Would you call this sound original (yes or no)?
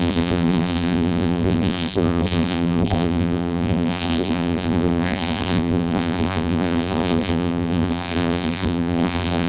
no